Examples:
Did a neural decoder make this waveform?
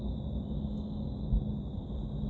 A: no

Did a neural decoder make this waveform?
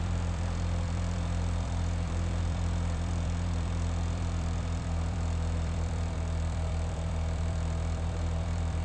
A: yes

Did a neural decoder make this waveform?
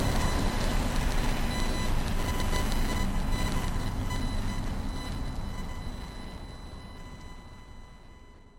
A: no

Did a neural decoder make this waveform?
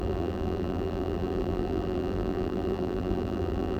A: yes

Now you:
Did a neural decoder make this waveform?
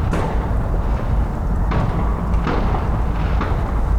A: no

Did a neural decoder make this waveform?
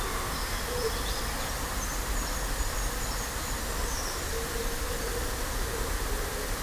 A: no